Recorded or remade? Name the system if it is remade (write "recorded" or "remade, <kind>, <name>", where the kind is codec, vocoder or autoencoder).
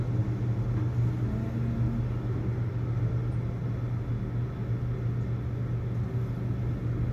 recorded